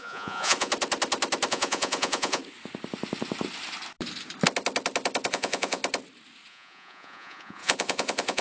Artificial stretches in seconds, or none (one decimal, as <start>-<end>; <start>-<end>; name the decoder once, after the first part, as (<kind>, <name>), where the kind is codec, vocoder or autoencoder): 0.0-0.7 (vocoder, Vocos); 1.5-2.4; 5.3-5.8; 6.5-8.4